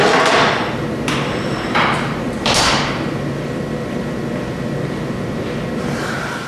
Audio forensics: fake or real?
fake